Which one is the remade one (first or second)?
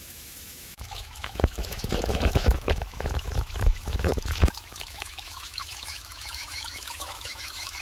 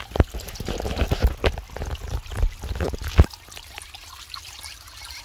first